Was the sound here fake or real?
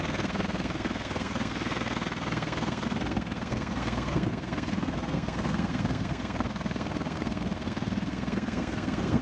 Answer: fake